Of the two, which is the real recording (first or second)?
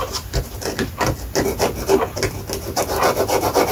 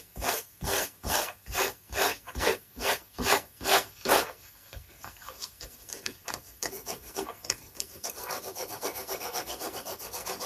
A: first